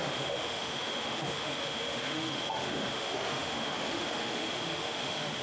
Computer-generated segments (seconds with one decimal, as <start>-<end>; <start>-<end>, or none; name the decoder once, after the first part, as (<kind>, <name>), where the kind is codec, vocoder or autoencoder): 0.0-5.4 (autoencoder, DAC-VAE)